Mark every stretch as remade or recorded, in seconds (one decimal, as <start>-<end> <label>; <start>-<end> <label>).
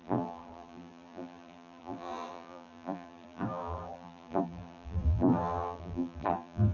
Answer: 0.0-6.7 remade